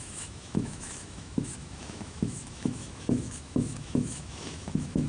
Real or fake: fake